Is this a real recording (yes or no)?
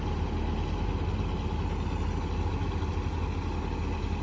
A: yes